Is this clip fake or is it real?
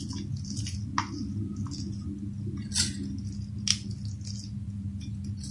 real